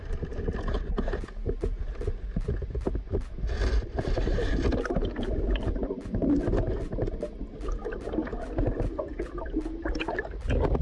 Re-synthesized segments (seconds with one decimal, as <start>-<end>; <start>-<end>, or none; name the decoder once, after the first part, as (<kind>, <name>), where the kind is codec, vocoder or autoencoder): none